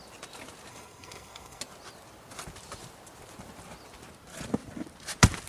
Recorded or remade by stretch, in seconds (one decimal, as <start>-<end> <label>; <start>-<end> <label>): 0.0-0.7 recorded; 0.7-1.6 remade; 1.6-5.5 recorded